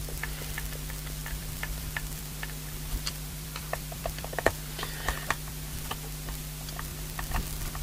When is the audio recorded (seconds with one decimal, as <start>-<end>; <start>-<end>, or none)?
0.0-1.2; 5.9-6.9